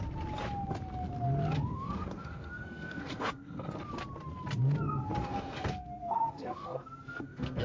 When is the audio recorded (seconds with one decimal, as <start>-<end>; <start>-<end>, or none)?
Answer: 0.0-1.7; 3.7-5.2